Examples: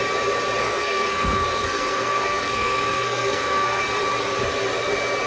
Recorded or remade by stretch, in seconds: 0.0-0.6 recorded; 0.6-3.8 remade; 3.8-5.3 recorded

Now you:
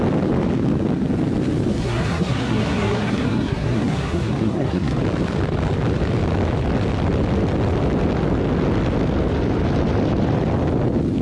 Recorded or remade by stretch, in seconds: 0.0-1.7 recorded; 1.7-5.0 remade; 5.0-11.2 recorded